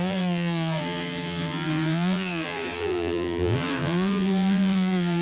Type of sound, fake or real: fake